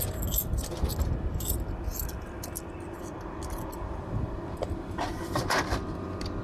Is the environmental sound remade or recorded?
recorded